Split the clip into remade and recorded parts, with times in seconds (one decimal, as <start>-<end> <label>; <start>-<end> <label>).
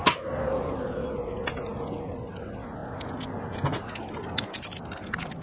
0.0-5.4 recorded